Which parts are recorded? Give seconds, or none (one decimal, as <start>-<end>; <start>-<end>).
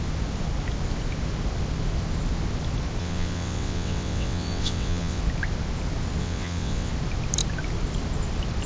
0.0-3.0; 5.2-6.2; 6.9-8.7